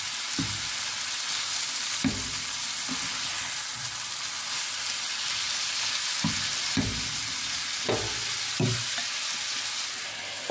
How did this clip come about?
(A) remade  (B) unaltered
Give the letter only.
B